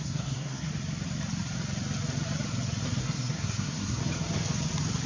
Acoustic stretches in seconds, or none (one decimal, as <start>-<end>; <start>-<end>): 0.7-3.0; 4.0-5.1